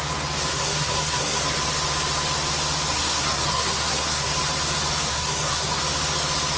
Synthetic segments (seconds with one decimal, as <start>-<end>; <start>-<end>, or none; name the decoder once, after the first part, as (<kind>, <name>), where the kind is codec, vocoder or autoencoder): 0.5-1.4 (codec, SNAC); 2.9-4.3; 5.1-5.8

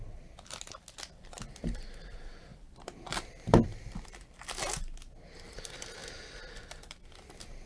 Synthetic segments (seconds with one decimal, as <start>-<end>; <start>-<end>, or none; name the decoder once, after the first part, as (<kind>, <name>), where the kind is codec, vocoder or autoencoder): 2.5-4.4 (vocoder, BigVGAN v2); 6.0-7.0